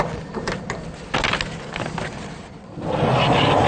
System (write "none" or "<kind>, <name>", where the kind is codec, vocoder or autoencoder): none